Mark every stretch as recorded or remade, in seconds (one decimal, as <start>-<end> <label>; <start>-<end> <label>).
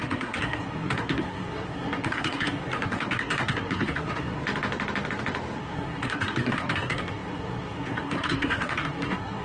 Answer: 0.0-4.4 remade; 4.4-5.6 recorded; 5.6-9.4 remade